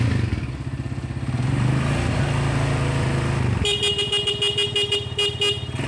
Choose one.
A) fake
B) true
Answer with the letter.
B